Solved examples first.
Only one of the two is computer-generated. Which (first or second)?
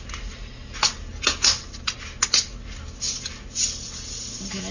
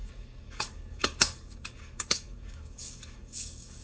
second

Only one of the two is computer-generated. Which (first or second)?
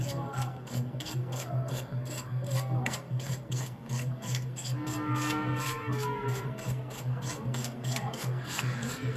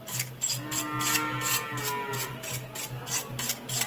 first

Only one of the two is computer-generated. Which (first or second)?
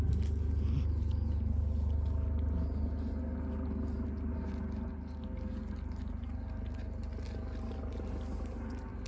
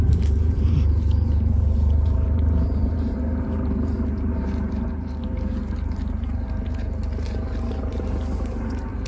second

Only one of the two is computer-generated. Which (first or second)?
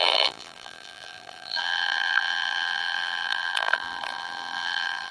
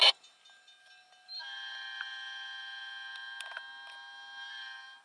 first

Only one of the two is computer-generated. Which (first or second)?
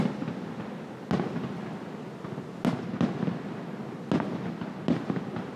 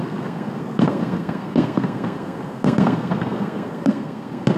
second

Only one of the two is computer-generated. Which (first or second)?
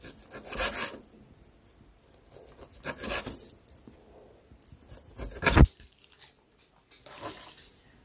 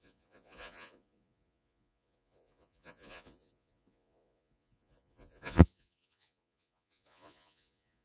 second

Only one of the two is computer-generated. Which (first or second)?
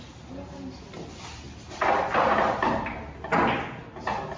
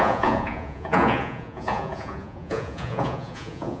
second